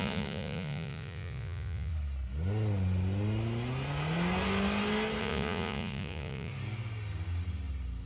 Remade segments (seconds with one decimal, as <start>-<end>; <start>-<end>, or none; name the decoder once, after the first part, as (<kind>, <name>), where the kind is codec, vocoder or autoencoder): 0.0-1.9 (vocoder, Vocos); 5.2-6.5